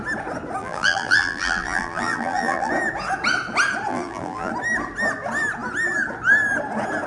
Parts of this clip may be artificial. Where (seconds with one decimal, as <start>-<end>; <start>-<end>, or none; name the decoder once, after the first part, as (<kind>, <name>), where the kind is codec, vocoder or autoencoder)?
0.6-2.7 (vocoder, BigVGAN v2); 3.9-4.5